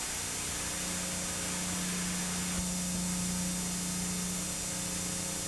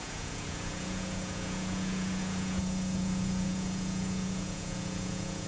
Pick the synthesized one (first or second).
second